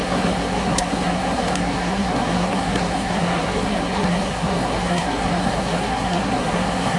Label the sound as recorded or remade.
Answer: remade